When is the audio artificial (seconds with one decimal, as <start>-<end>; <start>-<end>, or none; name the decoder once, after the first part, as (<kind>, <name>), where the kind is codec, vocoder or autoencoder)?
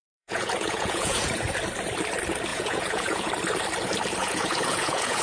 0.0-1.4 (vocoder, Vocos); 2.5-3.3; 4.2-5.2